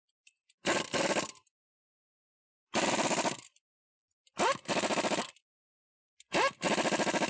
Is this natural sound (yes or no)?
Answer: yes